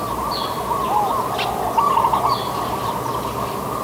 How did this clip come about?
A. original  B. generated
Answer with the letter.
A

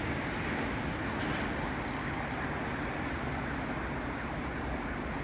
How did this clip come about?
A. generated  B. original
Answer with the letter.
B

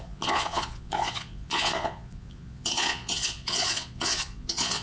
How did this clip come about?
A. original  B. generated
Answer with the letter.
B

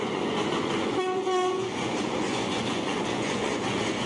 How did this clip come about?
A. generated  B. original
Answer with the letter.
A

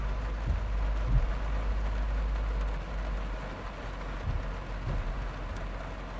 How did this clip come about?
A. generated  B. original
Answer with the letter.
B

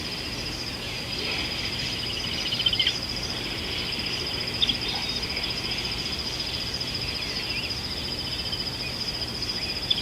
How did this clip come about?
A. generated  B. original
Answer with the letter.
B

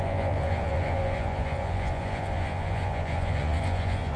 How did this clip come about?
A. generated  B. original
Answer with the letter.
A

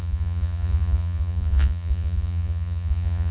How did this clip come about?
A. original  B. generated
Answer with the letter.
B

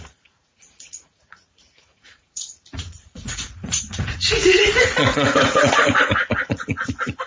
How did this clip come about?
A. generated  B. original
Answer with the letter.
A